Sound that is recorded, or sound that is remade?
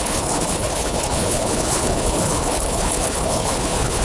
remade